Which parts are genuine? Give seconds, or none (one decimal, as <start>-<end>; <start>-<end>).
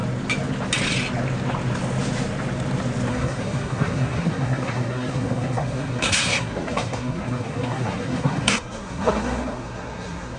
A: 0.0-3.1